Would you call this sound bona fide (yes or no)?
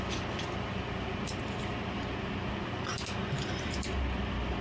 yes